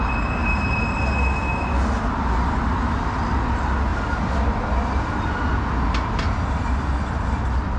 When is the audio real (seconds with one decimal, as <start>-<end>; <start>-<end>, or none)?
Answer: 0.0-7.8